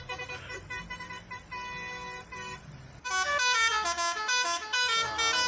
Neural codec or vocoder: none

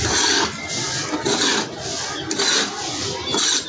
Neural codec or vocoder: none